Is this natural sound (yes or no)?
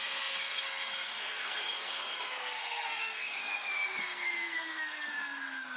no